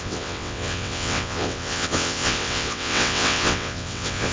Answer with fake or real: fake